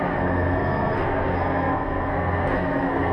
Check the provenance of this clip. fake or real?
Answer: fake